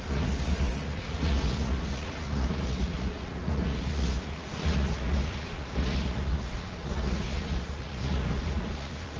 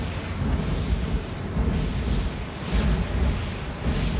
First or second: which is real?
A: second